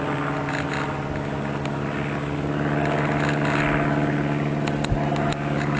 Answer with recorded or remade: recorded